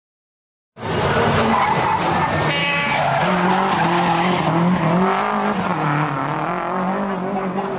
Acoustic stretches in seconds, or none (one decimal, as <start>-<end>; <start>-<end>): 0.0-2.6; 3.2-7.8